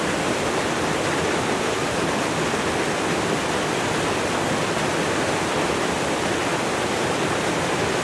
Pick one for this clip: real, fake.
real